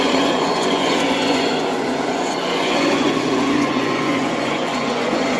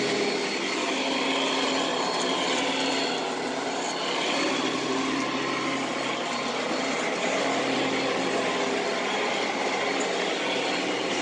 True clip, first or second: second